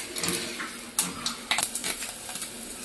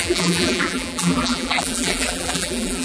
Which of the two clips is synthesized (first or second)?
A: second